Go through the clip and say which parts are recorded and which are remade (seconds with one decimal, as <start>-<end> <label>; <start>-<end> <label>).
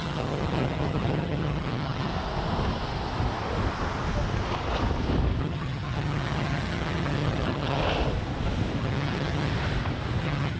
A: 0.0-2.1 remade; 2.1-5.4 recorded; 5.4-7.8 remade; 7.8-8.8 recorded; 8.8-9.5 remade; 9.5-10.2 recorded; 10.2-10.6 remade